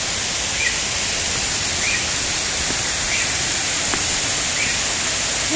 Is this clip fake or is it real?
real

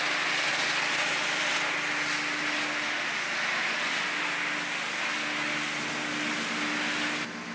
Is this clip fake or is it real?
real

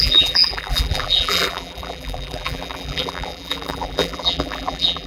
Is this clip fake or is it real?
fake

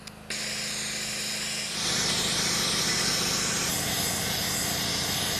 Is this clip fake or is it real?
real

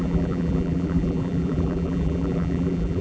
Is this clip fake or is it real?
fake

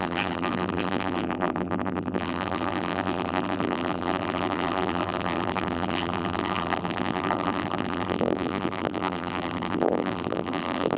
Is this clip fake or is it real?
fake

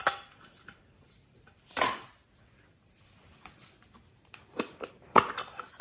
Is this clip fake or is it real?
fake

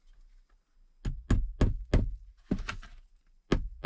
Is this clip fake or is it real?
real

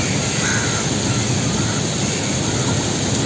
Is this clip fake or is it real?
real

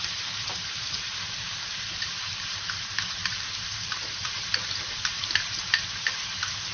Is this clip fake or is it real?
fake